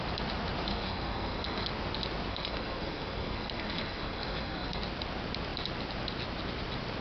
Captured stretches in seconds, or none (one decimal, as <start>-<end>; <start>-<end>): 0.0-0.7; 1.7-2.3; 4.8-7.0

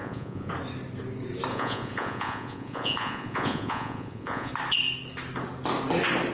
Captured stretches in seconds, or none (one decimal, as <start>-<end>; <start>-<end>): 0.5-1.5; 4.5-6.3

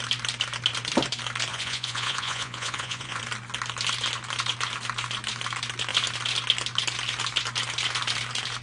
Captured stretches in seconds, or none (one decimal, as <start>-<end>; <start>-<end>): 0.0-1.5; 3.2-8.6

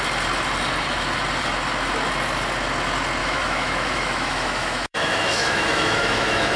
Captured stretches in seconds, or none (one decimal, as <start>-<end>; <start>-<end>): 0.0-3.2